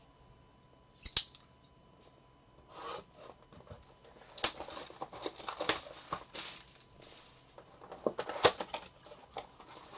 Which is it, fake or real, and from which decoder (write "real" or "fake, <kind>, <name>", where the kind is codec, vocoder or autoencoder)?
real